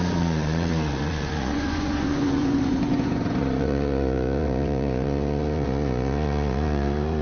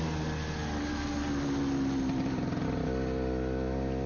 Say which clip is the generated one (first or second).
first